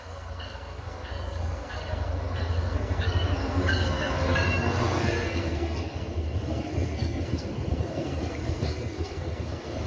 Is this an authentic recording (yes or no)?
no